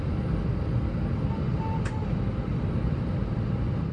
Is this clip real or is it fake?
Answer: real